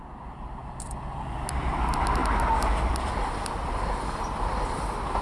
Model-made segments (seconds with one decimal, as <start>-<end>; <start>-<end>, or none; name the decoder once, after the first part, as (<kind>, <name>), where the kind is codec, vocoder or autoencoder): none